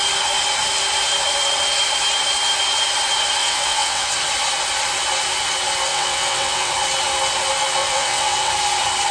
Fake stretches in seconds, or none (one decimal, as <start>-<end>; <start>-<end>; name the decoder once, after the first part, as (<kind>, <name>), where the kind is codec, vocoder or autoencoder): 3.4-4.1 (vocoder, WaveNeXt); 5.9-6.7; 7.8-8.5